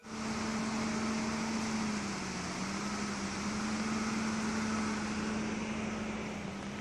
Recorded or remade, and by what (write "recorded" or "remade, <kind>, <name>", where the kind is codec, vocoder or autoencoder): recorded